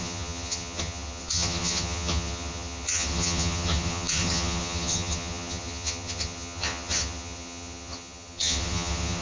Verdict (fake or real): fake